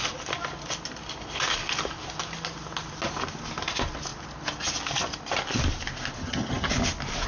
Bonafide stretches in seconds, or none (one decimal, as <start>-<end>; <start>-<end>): 0.0-6.2; 6.7-7.3